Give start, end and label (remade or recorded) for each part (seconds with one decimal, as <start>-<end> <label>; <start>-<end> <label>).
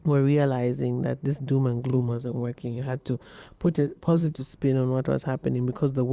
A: 0.0-1.9 recorded; 1.9-4.4 remade; 4.4-6.1 recorded